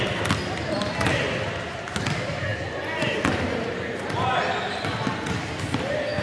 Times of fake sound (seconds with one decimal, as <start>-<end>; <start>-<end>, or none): none